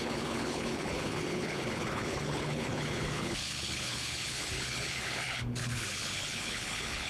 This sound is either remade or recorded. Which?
remade